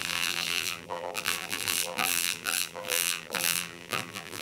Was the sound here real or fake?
fake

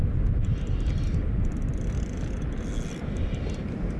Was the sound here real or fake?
real